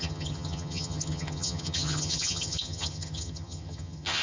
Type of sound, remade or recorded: remade